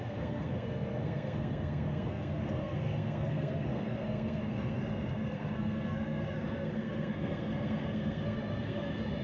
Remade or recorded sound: remade